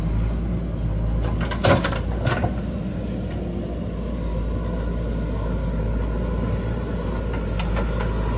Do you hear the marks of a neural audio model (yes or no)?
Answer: no